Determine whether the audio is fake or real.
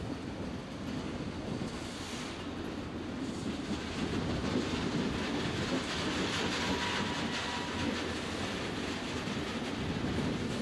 real